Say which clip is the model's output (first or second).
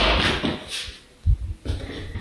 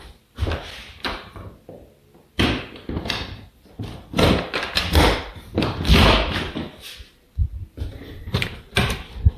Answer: second